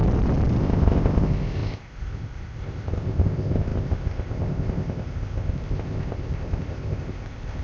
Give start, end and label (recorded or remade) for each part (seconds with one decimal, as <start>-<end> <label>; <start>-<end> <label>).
0.0-0.6 recorded; 0.6-7.6 remade